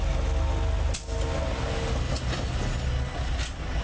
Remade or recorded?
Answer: recorded